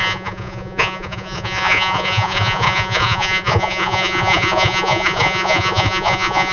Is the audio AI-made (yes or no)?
yes